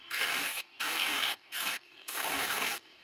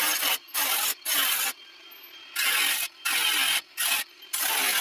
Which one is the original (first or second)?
second